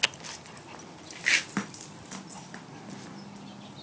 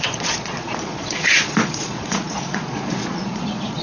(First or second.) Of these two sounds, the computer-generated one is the second